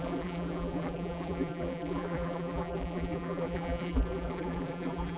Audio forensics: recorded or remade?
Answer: remade